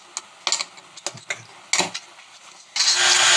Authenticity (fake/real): real